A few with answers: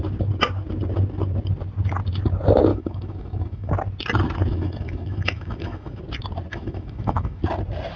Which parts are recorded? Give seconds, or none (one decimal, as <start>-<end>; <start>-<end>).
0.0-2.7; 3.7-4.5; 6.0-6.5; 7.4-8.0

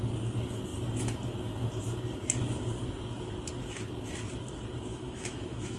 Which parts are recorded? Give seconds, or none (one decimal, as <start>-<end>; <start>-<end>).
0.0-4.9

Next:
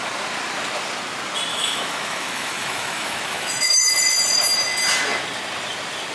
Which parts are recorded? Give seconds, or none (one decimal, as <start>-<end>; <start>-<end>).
0.0-1.5; 3.9-6.1

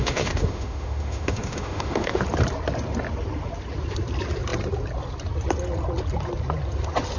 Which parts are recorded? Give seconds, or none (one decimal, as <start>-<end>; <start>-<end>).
2.2-7.2

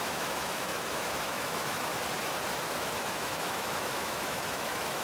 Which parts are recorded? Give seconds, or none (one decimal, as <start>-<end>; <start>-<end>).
1.9-2.7